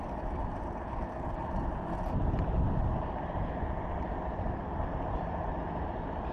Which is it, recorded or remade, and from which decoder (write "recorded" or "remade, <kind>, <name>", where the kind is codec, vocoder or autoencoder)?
recorded